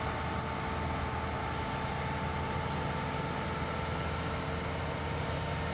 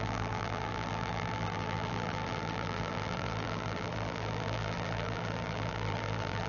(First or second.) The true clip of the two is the first